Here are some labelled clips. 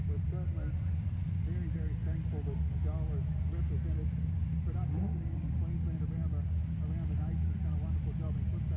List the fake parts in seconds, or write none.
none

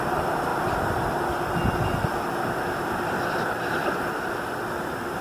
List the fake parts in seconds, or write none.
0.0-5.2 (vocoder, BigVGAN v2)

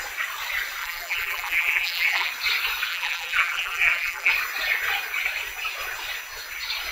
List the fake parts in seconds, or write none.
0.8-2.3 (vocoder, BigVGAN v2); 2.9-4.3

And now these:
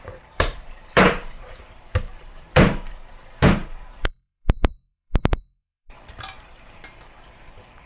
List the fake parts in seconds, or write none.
0.0-7.9 (vocoder, BigVGAN v2)

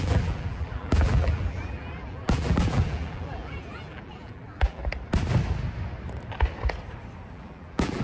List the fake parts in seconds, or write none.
0.0-4.8 (vocoder, BigVGAN v2); 7.3-8.0